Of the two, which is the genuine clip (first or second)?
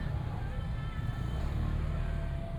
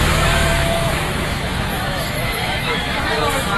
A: first